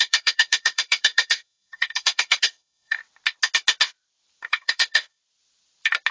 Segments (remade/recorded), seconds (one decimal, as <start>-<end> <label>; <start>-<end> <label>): 0.0-3.0 remade; 3.0-4.5 recorded; 4.5-5.2 remade; 5.2-6.1 recorded